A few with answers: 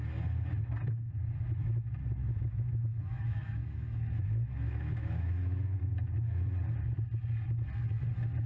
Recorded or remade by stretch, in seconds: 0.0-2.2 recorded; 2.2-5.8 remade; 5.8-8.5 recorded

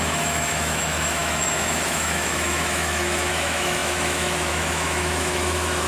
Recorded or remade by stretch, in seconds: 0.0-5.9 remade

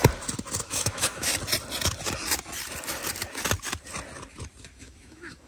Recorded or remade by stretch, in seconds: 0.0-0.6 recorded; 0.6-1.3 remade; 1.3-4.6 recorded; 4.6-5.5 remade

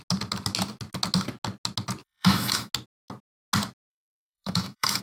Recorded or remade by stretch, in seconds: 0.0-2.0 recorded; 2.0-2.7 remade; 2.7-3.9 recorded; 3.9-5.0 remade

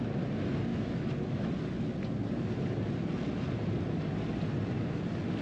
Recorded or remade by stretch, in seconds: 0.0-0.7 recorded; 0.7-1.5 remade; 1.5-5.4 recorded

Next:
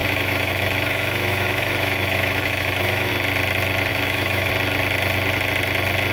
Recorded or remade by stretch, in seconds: 0.0-3.1 remade; 3.1-3.9 recorded; 3.9-4.5 remade; 4.5-6.1 recorded

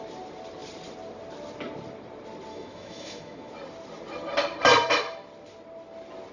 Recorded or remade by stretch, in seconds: 0.0-2.5 recorded; 2.5-3.5 remade; 3.5-6.3 recorded